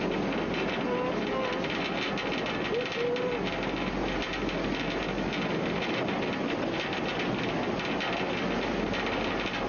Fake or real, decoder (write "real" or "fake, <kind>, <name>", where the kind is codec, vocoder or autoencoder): real